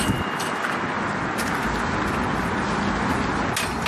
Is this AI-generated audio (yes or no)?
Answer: no